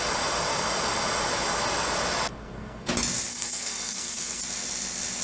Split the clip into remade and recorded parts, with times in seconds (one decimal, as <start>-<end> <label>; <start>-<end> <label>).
0.0-2.3 recorded; 2.3-2.9 remade; 2.9-3.3 recorded; 3.3-4.4 remade; 4.4-5.2 recorded